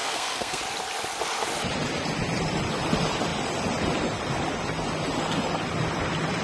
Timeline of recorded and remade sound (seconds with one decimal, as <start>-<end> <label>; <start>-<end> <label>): 0.0-0.6 remade; 0.6-6.4 recorded